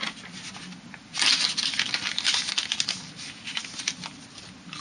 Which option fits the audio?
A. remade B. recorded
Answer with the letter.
B